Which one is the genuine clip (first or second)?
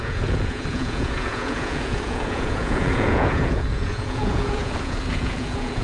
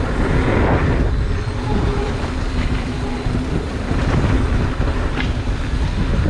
second